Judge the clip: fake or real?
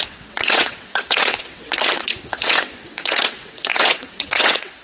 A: fake